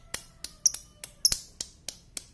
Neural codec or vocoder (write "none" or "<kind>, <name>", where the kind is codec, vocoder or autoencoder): none